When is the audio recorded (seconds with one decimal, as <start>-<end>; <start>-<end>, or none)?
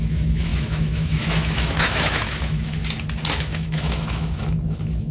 2.8-3.4